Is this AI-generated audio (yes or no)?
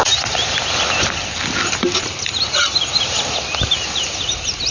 no